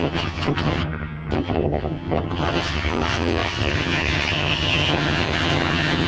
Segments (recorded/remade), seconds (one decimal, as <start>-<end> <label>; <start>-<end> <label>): 0.0-6.1 remade